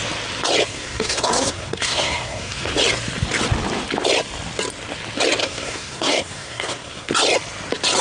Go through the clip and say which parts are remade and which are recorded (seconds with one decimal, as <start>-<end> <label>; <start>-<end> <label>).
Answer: 0.0-0.7 recorded; 0.7-2.7 remade; 2.7-5.4 recorded; 5.4-7.1 remade; 7.1-8.0 recorded